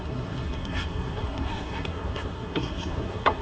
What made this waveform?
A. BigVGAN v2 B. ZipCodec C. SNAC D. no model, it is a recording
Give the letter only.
C